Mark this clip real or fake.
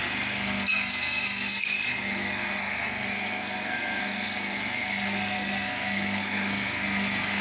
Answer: fake